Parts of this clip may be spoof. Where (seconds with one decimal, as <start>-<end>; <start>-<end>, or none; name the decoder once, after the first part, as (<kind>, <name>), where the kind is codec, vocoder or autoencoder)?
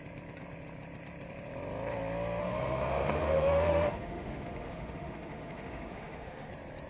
2.4-6.5 (autoencoder, DAC-VAE)